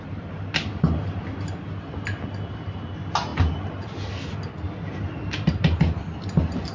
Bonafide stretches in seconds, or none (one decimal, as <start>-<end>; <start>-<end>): 0.0-6.7